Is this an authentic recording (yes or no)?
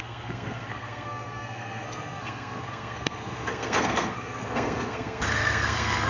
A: no